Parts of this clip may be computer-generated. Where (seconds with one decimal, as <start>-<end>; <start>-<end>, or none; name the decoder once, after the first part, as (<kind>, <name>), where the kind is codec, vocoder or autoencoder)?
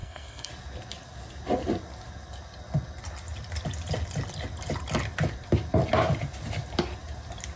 0.0-0.5 (codec, SNAC)